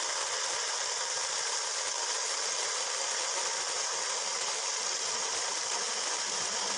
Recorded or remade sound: recorded